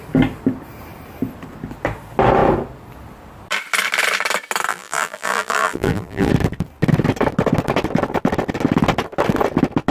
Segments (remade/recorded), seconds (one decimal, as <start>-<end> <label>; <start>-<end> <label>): 0.0-4.7 recorded; 4.7-6.3 remade; 6.3-9.9 recorded